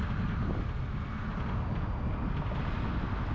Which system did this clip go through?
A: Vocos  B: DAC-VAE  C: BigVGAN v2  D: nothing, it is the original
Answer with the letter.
D